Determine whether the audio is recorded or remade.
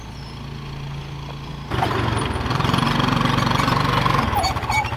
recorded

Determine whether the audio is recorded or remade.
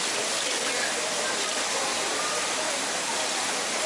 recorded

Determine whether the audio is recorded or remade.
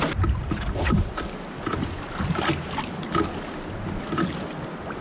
recorded